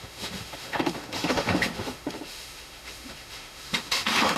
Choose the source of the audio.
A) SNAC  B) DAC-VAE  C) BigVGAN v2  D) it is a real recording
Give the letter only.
B